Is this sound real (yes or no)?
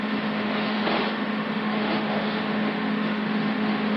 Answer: no